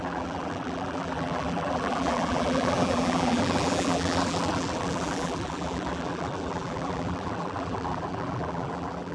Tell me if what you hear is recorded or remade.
remade